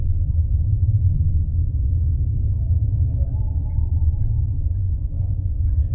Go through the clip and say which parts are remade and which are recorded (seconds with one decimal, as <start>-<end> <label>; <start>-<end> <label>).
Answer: 0.0-4.5 recorded; 4.5-5.5 remade; 5.5-5.9 recorded